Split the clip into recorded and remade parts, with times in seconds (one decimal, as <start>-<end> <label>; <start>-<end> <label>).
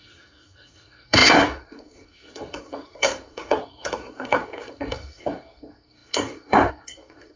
0.0-7.4 remade